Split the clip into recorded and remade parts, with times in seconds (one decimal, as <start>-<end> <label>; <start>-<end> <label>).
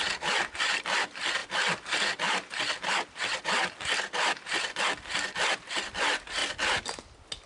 0.0-6.4 recorded; 6.4-6.9 remade; 6.9-7.5 recorded